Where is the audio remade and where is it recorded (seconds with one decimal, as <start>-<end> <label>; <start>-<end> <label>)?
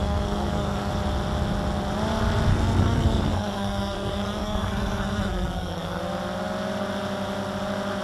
0.0-0.9 remade; 0.9-2.5 recorded; 2.5-6.0 remade; 6.0-8.0 recorded